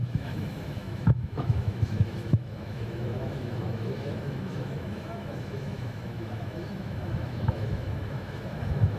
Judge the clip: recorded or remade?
remade